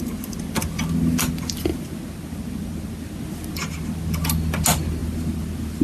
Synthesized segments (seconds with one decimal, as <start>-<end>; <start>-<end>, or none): none